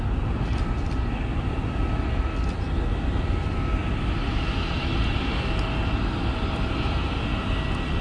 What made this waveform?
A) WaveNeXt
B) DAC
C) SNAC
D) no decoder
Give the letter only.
D